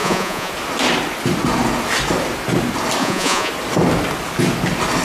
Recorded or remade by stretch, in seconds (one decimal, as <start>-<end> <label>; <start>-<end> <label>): 0.0-0.5 remade; 0.5-3.0 recorded; 3.0-3.5 remade; 3.5-5.0 recorded